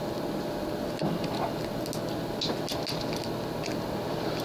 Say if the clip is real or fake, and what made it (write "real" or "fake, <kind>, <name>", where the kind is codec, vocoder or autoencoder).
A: real